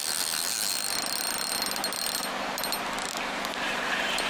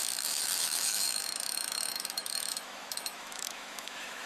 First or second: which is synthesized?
second